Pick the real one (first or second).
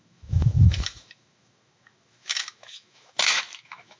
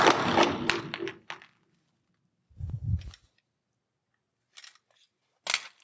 second